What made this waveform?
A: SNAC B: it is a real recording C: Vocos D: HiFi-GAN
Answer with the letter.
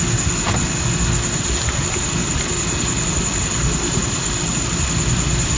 B